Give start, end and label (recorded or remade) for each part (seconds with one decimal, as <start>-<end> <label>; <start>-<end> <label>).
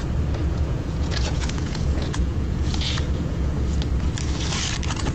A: 0.0-0.4 recorded; 0.4-3.5 remade; 3.5-5.1 recorded